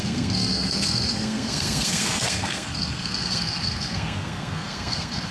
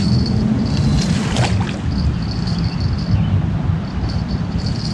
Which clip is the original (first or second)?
second